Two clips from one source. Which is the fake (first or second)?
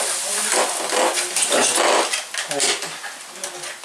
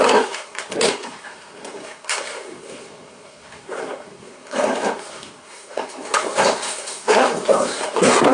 second